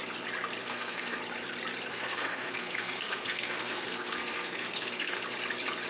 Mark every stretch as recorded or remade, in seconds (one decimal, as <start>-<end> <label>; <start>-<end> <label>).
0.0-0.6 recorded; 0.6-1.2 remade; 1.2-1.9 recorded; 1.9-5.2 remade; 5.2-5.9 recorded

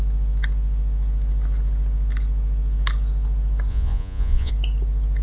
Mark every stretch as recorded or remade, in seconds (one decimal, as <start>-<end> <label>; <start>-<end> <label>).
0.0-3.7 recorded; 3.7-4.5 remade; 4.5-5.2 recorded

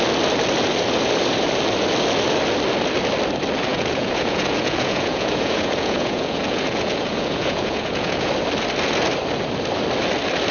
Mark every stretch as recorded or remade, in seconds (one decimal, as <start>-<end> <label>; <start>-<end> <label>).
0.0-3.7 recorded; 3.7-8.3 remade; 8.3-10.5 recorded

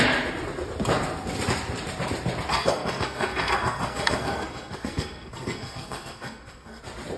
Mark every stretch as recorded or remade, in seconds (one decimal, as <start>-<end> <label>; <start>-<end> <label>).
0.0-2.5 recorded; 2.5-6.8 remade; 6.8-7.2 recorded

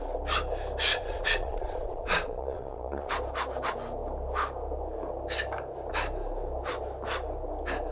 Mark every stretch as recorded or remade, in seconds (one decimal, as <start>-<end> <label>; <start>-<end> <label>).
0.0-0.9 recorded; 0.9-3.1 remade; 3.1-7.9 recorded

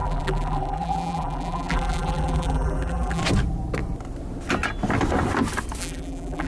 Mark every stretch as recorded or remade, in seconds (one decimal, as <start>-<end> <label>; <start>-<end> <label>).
0.0-3.2 remade; 3.2-5.8 recorded; 5.8-6.5 remade

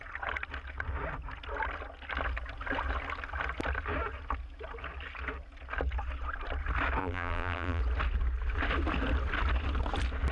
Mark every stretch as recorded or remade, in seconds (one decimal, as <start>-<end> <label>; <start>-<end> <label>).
0.0-7.0 recorded; 7.0-7.8 remade; 7.8-10.3 recorded

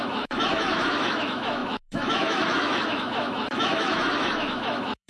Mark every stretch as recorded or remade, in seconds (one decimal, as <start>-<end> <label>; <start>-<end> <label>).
0.0-5.1 remade